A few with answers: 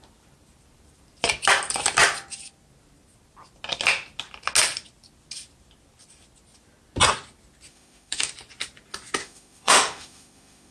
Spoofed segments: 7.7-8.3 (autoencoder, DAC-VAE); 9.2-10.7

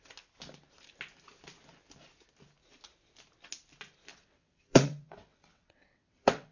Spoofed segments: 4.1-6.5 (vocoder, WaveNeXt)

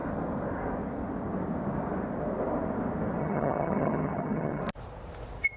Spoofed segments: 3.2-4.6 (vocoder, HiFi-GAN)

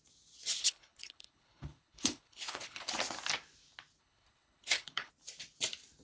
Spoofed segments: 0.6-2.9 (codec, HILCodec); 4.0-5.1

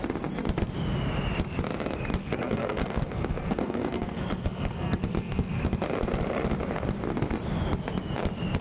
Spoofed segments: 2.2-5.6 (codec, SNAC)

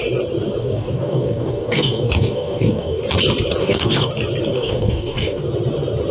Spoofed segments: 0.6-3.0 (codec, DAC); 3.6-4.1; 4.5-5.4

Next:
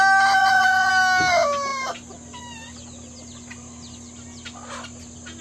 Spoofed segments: 0.4-0.9 (vocoder, Vocos)

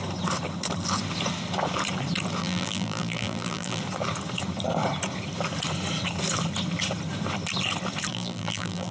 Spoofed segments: 2.4-3.8 (vocoder, BigVGAN v2); 8.1-8.9